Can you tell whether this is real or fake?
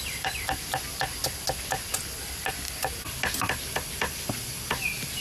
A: real